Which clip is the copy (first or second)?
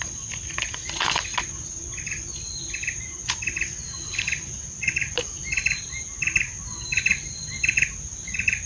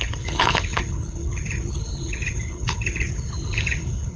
second